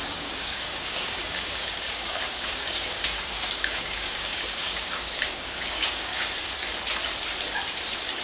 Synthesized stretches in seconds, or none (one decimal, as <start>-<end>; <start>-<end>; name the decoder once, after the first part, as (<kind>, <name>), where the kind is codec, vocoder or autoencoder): 0.0-6.1 (codec, DAC)